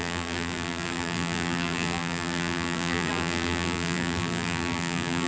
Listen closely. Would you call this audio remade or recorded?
remade